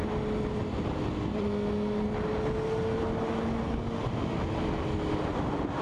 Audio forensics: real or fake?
real